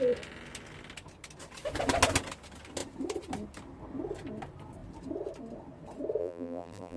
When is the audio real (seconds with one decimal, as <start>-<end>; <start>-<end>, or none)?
0.0-6.2